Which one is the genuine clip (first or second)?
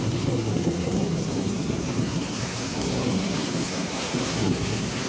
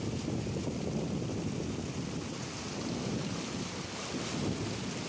second